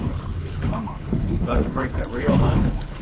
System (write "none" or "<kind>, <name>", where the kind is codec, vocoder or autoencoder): codec, HILCodec